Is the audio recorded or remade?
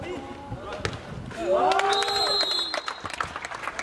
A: recorded